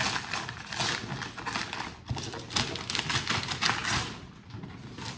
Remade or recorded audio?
recorded